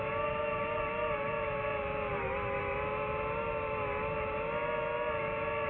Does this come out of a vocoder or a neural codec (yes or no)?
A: no